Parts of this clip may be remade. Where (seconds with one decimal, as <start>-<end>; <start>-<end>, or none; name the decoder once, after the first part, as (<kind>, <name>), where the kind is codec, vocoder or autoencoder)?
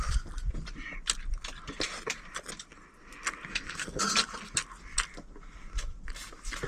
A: 3.5-4.0 (codec, SNAC)